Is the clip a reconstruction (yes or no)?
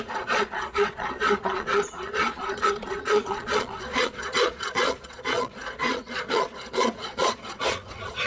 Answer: yes